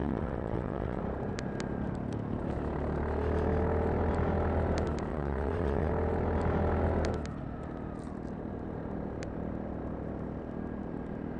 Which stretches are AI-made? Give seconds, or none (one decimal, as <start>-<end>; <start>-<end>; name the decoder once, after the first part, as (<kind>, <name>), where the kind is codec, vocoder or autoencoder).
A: 0.0-1.0 (vocoder, WaveNeXt); 5.1-5.9